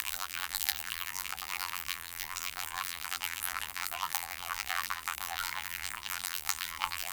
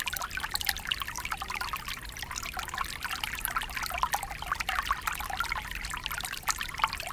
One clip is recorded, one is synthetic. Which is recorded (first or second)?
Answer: second